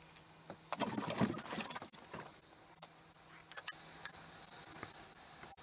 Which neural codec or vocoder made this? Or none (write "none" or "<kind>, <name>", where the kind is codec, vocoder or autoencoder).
none